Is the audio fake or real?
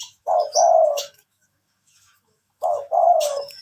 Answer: fake